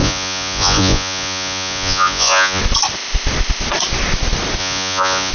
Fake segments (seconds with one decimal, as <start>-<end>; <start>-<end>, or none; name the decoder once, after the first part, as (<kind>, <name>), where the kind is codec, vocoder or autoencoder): 0.0-2.6 (vocoder, Vocos); 4.6-5.3